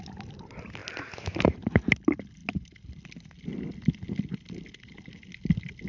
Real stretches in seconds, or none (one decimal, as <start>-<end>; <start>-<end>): 0.0-5.9